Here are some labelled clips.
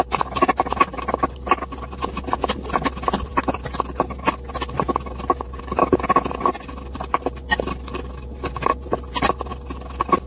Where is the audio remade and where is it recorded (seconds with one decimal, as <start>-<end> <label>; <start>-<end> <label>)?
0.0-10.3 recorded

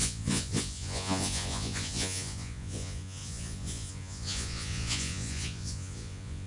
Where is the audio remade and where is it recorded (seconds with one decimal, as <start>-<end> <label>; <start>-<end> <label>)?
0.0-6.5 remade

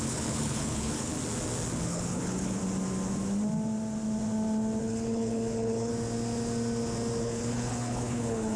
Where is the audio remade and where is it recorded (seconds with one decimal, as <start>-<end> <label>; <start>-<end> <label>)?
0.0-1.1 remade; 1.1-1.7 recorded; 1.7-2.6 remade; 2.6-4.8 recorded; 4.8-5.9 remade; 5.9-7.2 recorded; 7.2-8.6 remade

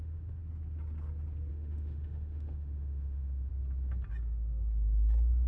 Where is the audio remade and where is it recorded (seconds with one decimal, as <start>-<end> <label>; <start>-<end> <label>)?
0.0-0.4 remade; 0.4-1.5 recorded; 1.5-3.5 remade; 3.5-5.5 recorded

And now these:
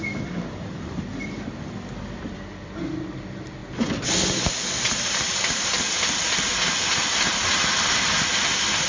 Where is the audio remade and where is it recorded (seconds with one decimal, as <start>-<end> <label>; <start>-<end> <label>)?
0.0-8.9 recorded